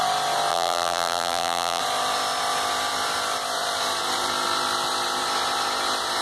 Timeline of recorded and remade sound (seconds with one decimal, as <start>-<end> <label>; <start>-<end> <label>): 0.0-0.5 recorded; 0.5-1.8 remade; 1.8-6.2 recorded